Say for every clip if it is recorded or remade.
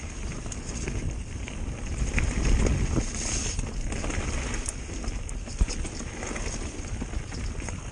recorded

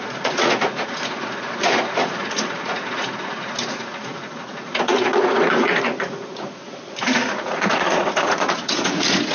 remade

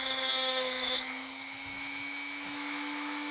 remade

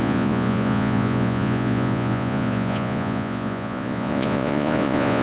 remade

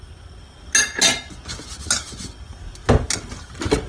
recorded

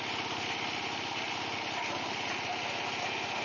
recorded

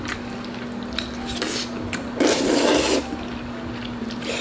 recorded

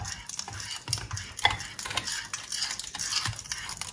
recorded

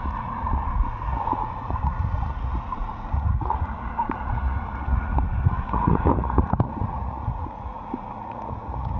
remade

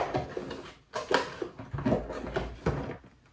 recorded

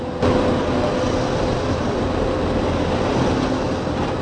recorded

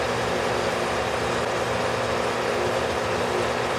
recorded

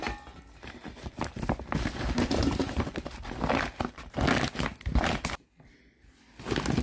recorded